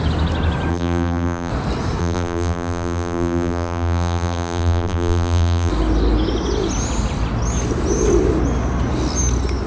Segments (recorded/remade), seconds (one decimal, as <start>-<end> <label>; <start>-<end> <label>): 0.0-0.7 recorded; 0.7-1.5 remade; 1.5-2.0 recorded; 2.0-5.7 remade; 5.7-9.7 recorded